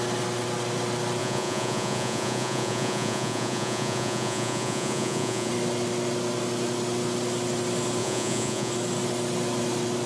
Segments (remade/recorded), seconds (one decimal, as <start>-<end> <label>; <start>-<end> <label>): 0.0-1.2 recorded; 1.2-5.5 remade; 5.5-8.0 recorded; 8.0-8.7 remade; 8.7-10.1 recorded